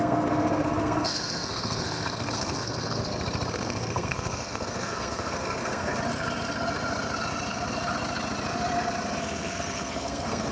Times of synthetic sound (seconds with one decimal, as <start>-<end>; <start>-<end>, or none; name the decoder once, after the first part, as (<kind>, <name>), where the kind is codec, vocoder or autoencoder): 0.0-3.0 (codec, SNAC); 3.5-5.9; 9.2-10.5